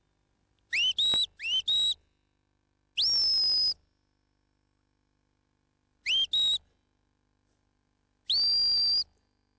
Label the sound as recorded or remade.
recorded